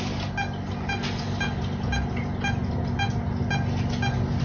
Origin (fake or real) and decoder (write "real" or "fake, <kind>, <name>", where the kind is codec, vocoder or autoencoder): real